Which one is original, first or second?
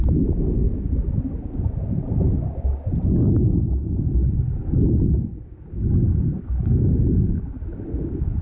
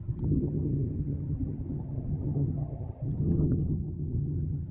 first